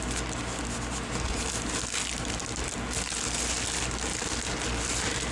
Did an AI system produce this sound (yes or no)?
no